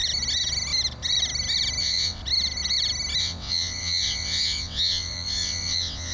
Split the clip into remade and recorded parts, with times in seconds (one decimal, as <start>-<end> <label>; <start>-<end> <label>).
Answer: 0.0-1.8 recorded; 1.8-2.2 remade; 2.2-3.2 recorded; 3.2-6.1 remade

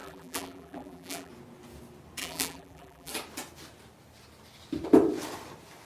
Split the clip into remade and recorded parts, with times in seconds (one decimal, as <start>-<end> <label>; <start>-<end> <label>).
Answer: 0.0-1.3 remade; 1.3-2.2 recorded; 2.2-3.1 remade; 3.1-5.8 recorded

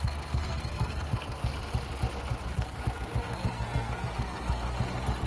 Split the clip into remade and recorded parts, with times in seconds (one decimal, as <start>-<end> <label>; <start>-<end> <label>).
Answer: 0.0-1.5 remade; 1.5-2.5 recorded; 2.5-4.7 remade; 4.7-5.3 recorded

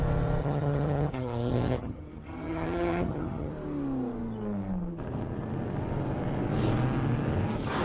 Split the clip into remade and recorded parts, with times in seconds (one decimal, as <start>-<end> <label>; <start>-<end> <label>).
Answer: 0.0-0.4 recorded; 0.4-3.5 remade; 3.5-7.8 recorded

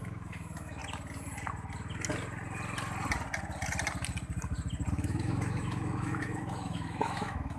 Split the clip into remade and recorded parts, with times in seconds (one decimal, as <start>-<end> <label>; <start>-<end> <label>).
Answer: 0.0-0.8 remade; 0.8-4.9 recorded; 4.9-7.6 remade

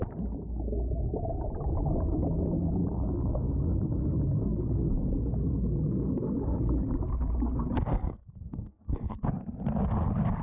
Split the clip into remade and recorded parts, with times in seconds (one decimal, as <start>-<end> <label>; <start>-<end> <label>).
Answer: 0.0-7.9 recorded; 7.9-9.2 remade; 9.2-10.4 recorded

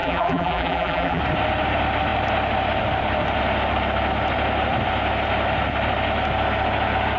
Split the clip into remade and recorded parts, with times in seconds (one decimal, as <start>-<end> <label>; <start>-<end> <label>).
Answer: 0.0-1.2 remade; 1.2-7.2 recorded